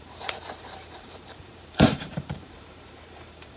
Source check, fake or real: fake